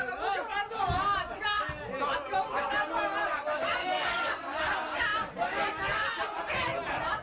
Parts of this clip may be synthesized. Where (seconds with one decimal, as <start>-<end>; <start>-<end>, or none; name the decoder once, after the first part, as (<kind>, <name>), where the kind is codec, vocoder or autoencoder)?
3.8-4.6 (codec, DAC)